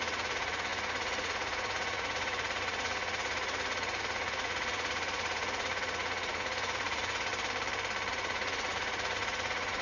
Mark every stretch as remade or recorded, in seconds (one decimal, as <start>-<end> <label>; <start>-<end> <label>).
0.0-7.3 remade; 7.3-8.1 recorded; 8.1-9.8 remade